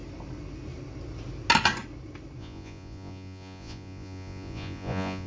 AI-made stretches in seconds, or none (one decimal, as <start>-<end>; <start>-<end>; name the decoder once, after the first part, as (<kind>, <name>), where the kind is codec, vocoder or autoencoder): 2.4-5.3 (vocoder, Vocos)